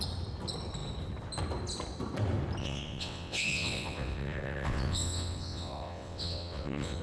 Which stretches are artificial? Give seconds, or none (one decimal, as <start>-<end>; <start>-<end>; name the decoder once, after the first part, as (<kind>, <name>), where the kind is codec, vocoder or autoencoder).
2.6-7.0 (vocoder, WaveNeXt)